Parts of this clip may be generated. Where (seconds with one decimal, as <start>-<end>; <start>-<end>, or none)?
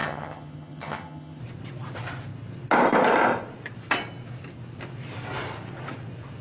0.0-1.4